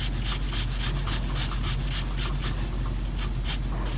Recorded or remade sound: recorded